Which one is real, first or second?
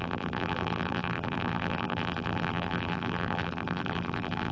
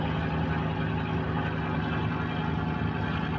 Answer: second